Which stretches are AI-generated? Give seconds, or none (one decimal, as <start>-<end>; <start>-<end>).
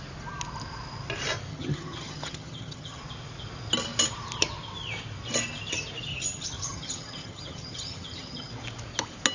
1.5-3.0; 6.1-8.5